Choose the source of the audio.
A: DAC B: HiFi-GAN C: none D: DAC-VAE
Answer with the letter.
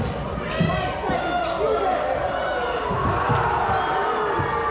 C